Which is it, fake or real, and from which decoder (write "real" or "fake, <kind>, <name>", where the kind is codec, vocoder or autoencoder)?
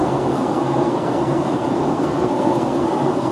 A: fake, codec, SNAC